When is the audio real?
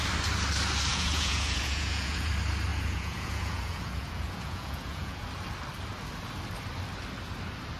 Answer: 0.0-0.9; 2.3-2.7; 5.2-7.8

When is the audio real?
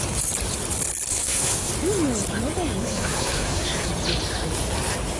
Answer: 0.0-1.1; 1.7-2.8; 3.9-5.2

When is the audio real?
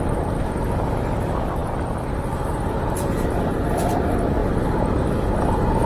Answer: 0.0-5.9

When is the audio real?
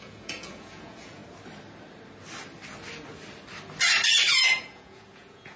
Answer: 1.2-4.6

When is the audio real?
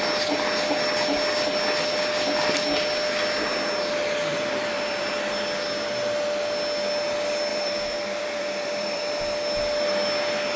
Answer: 0.0-4.3; 5.1-7.5; 9.0-10.6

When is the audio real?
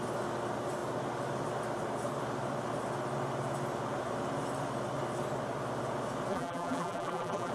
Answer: 0.0-6.3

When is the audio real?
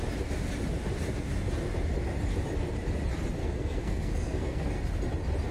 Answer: 0.0-3.4; 4.8-5.5